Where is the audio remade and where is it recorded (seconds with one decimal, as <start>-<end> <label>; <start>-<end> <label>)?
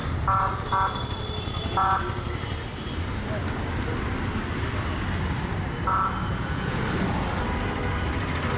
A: 0.0-6.3 recorded; 6.3-6.8 remade; 6.8-8.6 recorded